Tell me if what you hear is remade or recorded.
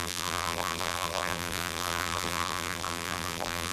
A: remade